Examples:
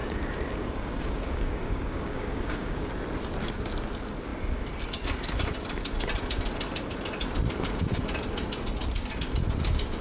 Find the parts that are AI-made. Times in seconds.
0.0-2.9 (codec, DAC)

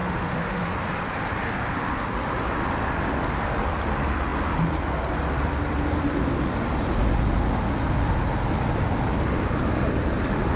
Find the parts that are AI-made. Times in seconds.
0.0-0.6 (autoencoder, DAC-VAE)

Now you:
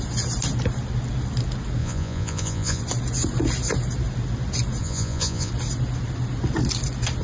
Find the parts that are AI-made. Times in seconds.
1.8-2.8 (vocoder, Vocos); 4.8-5.5

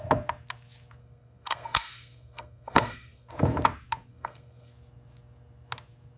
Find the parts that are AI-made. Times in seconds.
1.0-3.3 (codec, SNAC); 4.1-4.7